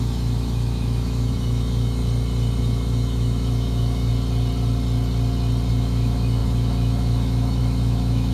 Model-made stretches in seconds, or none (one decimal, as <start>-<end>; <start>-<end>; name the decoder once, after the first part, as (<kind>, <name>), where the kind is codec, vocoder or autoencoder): 0.0-2.0 (autoencoder, DAC-VAE); 2.6-4.1; 5.7-8.3